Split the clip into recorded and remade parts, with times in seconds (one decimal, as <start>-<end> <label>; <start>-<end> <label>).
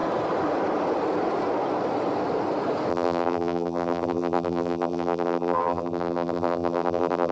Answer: 0.0-2.9 recorded; 2.9-7.3 remade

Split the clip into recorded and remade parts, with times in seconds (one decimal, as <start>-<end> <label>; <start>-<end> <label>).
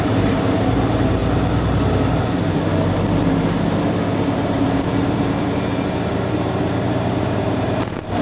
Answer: 0.0-1.2 remade; 1.2-6.1 recorded; 6.1-8.2 remade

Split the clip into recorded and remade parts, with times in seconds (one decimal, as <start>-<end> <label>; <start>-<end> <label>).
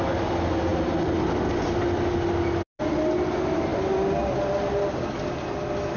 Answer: 0.0-3.7 recorded; 3.7-4.4 remade; 4.4-6.0 recorded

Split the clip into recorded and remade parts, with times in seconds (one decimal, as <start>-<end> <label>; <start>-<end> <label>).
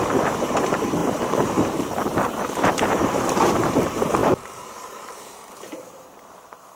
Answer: 0.0-6.8 remade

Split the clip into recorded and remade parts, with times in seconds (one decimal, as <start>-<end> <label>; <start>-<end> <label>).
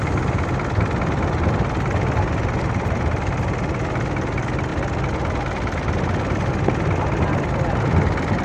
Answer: 0.0-8.4 recorded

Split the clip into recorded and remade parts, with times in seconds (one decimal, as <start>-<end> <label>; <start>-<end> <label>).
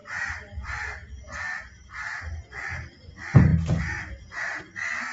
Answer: 0.0-5.1 recorded